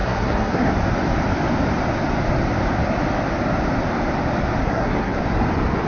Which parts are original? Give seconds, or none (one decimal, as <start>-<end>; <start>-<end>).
0.7-4.6; 5.2-5.9